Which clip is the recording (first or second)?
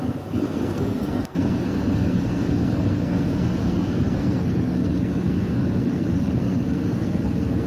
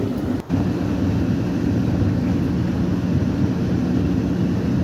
second